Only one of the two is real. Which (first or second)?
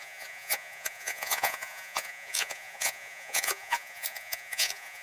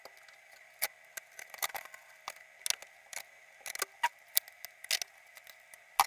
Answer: second